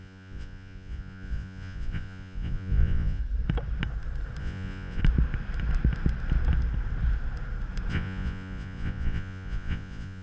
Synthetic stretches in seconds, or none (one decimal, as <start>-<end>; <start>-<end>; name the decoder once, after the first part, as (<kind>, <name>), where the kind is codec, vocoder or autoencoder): 0.0-3.2 (vocoder, Vocos); 4.4-5.0; 7.9-10.2